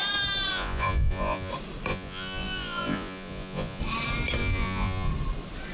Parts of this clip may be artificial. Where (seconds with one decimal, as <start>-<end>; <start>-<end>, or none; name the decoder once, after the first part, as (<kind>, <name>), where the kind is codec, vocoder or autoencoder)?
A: 0.5-1.5 (vocoder, Vocos); 1.9-3.8; 4.4-5.1